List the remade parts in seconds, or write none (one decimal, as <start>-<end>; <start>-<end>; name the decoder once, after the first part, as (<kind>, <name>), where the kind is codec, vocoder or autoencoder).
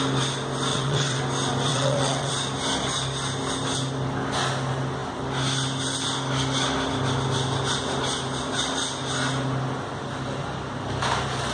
0.7-1.2 (vocoder, WaveNeXt); 1.7-2.3